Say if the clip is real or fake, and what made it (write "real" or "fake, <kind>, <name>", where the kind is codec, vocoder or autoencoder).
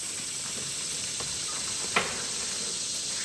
real